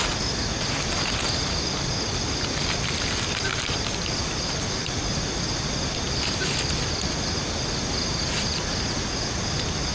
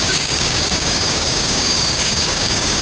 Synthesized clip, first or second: second